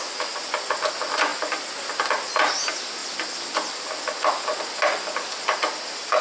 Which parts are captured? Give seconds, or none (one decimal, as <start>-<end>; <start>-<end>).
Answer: 0.0-6.2